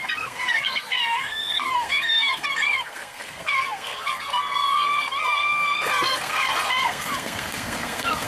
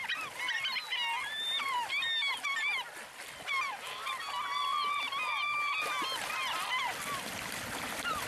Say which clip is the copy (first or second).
first